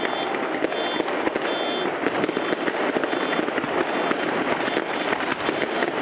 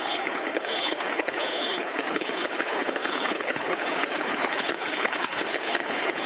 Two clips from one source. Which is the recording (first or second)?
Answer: first